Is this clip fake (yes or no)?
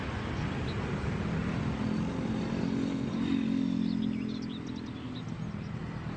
no